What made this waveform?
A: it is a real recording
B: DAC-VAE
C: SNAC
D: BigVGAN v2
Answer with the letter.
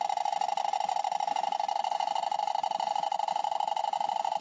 A